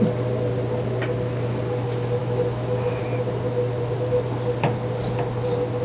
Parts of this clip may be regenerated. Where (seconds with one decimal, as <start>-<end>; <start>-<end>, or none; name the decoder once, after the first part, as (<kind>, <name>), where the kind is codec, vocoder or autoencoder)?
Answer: 2.2-3.0 (autoencoder, DAC-VAE)